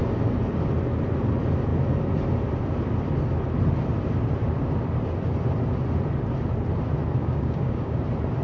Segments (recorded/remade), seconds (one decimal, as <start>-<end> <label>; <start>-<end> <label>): 0.0-7.2 recorded; 7.2-8.0 remade; 8.0-8.4 recorded